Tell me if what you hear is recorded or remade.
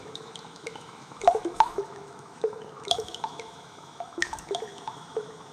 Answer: remade